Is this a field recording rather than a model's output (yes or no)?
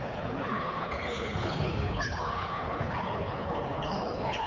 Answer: no